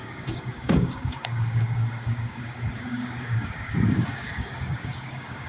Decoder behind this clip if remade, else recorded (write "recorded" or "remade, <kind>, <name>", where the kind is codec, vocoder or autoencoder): remade, codec, DAC